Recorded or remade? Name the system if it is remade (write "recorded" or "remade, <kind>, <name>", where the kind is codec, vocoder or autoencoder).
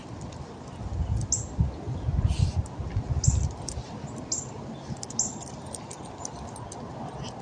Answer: recorded